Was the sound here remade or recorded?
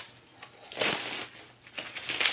recorded